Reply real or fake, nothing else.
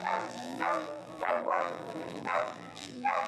fake